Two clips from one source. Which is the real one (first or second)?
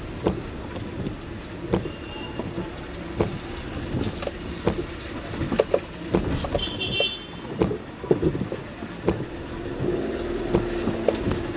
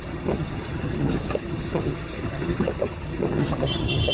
first